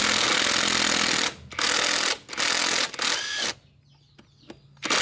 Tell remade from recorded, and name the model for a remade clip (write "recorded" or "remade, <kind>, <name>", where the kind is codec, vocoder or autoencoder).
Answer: recorded